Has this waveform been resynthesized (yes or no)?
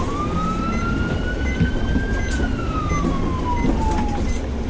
no